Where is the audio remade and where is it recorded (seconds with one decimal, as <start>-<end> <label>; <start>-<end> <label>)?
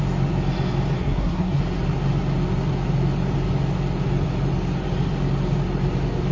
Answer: 0.0-1.0 recorded; 1.0-1.6 remade; 1.6-6.3 recorded